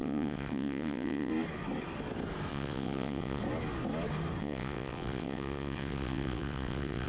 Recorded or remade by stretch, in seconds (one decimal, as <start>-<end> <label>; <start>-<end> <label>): 0.0-1.3 remade; 1.3-2.5 recorded; 2.5-3.4 remade; 3.4-4.4 recorded; 4.4-7.1 remade